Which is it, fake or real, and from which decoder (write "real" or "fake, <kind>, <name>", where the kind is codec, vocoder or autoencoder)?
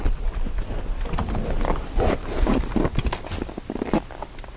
real